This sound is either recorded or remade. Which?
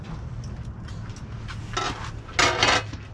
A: recorded